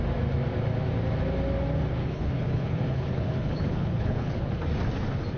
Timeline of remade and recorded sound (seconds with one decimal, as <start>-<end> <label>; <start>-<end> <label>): 0.0-2.0 recorded; 2.0-4.6 remade; 4.6-5.4 recorded